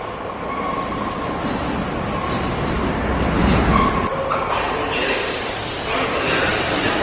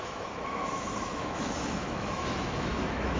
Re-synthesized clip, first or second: second